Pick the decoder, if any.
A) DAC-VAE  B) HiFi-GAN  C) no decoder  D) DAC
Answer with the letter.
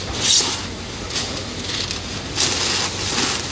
C